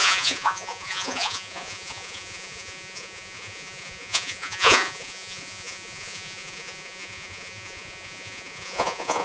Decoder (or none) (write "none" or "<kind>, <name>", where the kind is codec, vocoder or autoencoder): vocoder, Vocos